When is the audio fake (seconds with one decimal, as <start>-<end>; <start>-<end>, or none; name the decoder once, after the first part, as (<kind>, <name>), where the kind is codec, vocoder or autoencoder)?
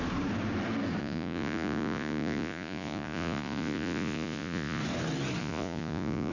1.0-4.8 (vocoder, Vocos); 5.4-6.3